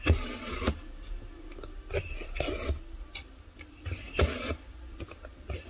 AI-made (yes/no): no